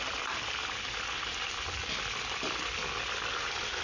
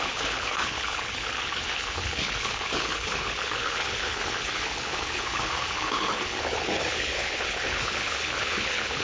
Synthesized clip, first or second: second